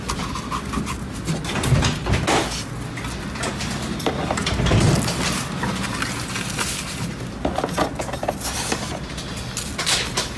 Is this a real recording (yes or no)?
yes